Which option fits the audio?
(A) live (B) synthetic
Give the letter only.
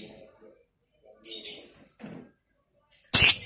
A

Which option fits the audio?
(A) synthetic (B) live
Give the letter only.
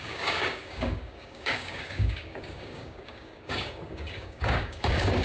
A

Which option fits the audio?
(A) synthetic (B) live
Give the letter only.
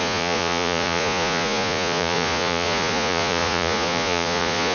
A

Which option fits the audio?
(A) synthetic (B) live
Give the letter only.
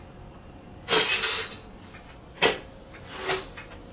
B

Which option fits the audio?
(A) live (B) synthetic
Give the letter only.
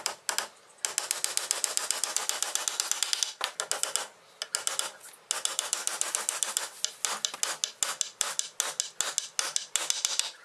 A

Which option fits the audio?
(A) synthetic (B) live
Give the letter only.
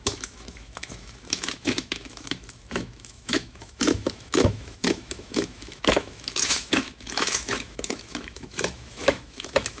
A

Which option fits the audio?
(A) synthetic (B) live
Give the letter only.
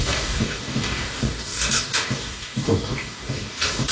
A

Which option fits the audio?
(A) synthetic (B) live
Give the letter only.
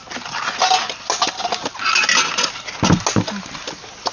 B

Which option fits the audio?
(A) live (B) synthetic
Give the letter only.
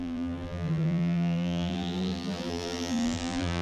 B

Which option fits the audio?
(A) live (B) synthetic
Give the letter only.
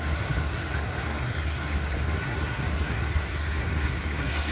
B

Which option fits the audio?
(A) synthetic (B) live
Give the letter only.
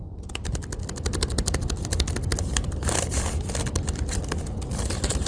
B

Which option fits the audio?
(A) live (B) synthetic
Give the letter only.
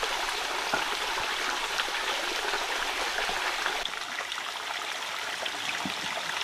A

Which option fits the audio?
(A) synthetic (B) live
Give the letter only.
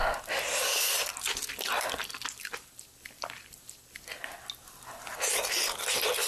B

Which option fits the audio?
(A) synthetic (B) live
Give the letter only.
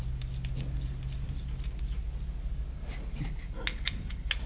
B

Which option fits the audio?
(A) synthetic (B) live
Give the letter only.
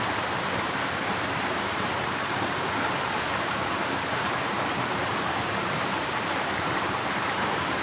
A